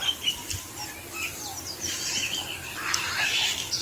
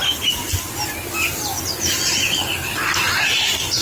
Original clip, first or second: second